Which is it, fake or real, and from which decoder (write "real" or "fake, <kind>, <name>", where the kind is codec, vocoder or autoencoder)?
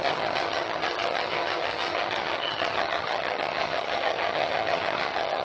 fake, vocoder, HiFi-GAN